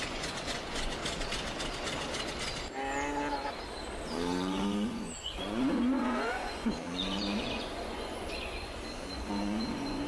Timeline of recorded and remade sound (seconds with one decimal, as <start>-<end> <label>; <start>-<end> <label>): 0.0-1.0 remade; 1.0-4.0 recorded; 4.0-10.1 remade